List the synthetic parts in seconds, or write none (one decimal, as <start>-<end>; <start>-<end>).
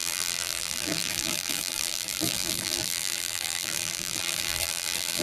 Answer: 0.0-5.2